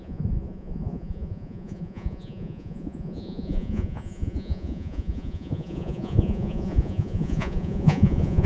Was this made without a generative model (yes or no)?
no